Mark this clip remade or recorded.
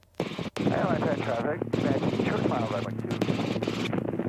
recorded